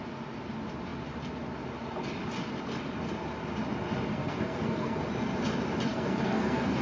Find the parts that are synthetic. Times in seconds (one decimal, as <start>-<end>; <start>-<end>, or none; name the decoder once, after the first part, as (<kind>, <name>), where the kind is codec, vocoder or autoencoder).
4.1-5.0 (codec, SNAC); 5.9-6.8